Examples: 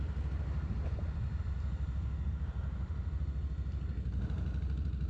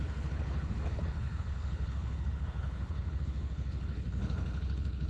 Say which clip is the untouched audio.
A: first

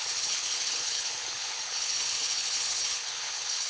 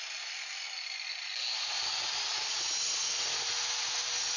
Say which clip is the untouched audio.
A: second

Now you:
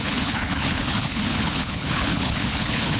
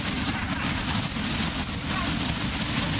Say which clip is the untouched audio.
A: second